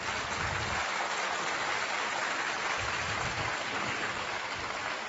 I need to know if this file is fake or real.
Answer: real